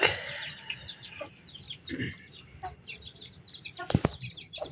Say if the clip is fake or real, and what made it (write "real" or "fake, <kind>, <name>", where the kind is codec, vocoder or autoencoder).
fake, vocoder, BigVGAN v2